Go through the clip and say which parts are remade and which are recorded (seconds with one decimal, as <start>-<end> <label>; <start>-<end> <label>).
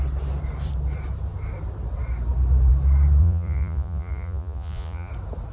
0.0-3.2 recorded; 3.2-5.1 remade; 5.1-5.5 recorded